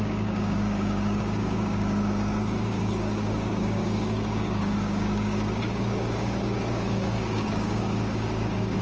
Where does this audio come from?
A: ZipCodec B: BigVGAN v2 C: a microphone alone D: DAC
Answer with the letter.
D